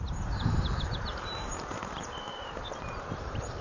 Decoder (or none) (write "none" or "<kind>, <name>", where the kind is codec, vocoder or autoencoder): vocoder, BigVGAN v2